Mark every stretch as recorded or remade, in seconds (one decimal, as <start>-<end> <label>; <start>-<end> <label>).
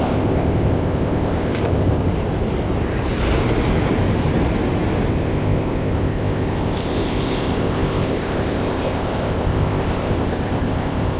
0.0-2.1 remade; 2.1-5.1 recorded; 5.1-11.2 remade